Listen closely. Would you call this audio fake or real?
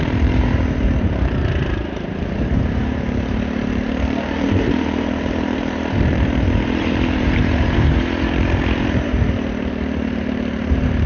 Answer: fake